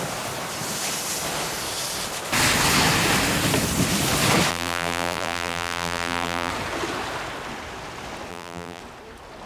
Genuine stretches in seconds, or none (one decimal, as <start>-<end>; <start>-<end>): 0.0-4.5; 6.5-8.3; 8.8-9.5